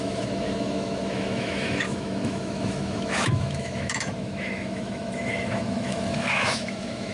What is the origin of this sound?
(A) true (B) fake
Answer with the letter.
B